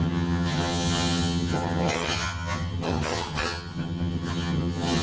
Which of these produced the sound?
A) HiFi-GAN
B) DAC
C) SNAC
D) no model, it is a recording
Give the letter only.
A